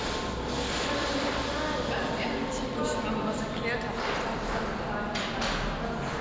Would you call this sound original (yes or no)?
yes